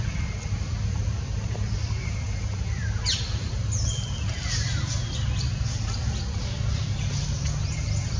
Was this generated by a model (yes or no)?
yes